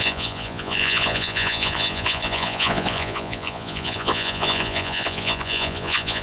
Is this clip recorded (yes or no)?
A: no